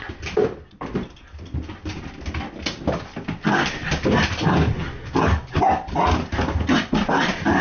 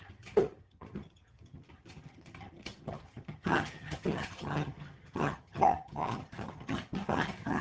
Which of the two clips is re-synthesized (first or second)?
second